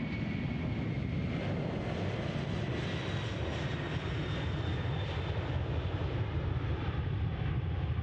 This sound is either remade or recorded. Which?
recorded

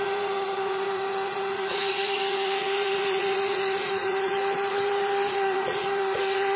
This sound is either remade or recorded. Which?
remade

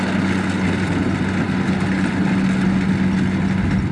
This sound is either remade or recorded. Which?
recorded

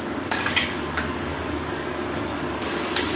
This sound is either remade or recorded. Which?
remade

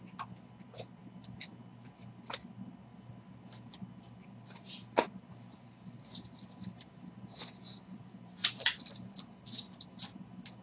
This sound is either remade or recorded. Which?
recorded